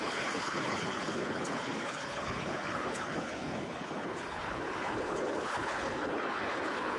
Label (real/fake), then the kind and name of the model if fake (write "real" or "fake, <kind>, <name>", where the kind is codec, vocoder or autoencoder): fake, codec, HILCodec